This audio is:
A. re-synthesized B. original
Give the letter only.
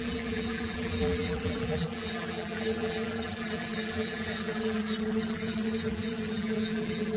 A